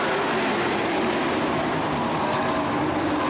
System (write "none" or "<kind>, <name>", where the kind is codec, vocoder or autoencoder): none